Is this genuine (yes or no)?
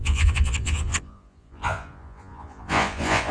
no